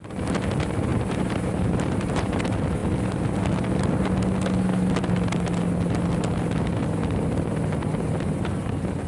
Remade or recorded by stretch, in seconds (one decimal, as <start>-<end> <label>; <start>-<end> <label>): 0.0-0.9 recorded; 0.9-2.4 remade; 2.4-9.1 recorded